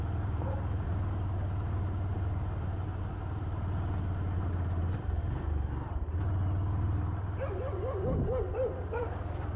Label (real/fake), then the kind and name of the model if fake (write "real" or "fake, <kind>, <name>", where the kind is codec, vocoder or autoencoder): real